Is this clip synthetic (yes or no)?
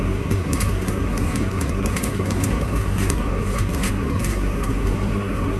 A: yes